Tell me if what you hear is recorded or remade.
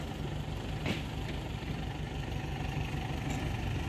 recorded